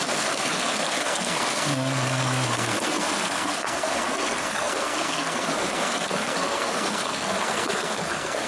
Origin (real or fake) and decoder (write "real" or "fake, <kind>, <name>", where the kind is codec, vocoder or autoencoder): fake, codec, SNAC